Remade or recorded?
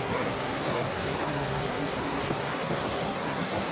remade